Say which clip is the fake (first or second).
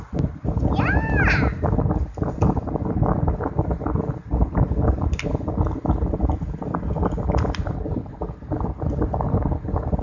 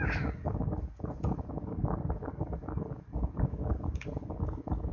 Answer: second